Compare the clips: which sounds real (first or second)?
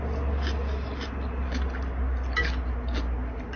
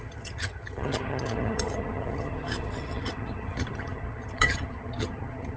first